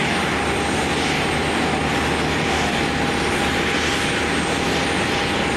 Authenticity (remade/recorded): recorded